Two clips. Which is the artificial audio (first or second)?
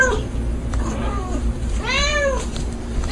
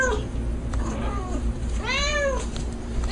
first